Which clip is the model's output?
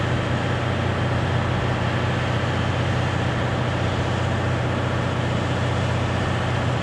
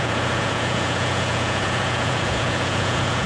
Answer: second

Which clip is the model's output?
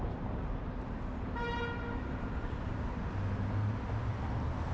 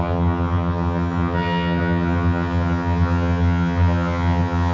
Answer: second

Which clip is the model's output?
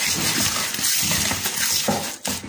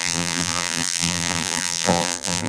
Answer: second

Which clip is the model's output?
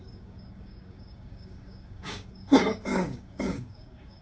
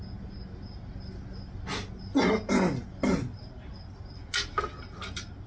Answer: first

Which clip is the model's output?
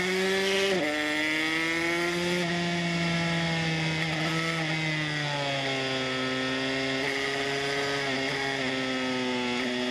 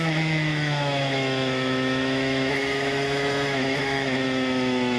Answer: second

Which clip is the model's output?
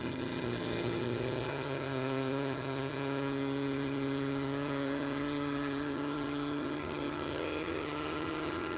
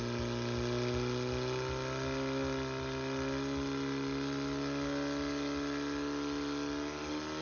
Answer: first